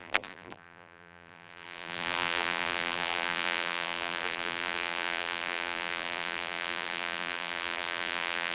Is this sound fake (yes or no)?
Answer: yes